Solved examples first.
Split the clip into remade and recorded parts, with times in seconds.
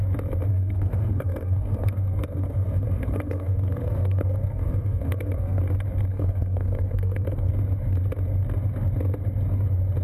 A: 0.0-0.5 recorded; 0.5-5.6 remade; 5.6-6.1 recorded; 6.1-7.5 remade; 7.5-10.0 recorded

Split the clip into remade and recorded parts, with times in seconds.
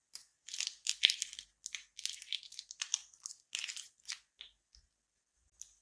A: 0.0-5.8 recorded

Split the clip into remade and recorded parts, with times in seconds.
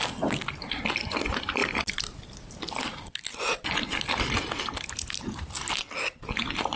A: 0.0-6.8 recorded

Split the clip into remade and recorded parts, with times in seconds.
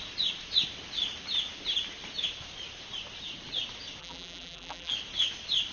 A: 0.0-4.0 recorded; 4.0-4.9 remade; 4.9-5.7 recorded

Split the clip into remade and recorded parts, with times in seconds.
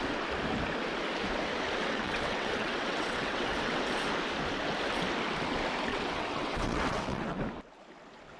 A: 0.0-1.8 recorded; 1.8-3.8 remade; 3.8-5.9 recorded; 5.9-7.4 remade; 7.4-8.4 recorded